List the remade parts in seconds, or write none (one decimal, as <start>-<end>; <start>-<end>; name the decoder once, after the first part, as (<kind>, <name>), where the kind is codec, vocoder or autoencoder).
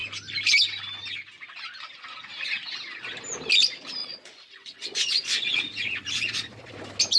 4.0-6.7 (vocoder, Vocos)